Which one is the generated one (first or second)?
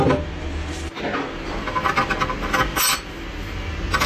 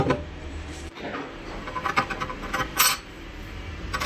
second